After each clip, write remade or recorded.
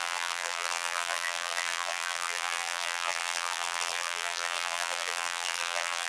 remade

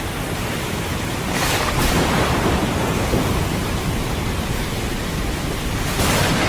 remade